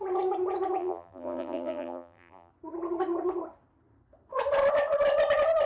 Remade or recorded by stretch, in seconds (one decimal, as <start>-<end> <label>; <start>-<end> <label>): 0.0-0.8 recorded; 0.8-2.5 remade; 2.5-5.7 recorded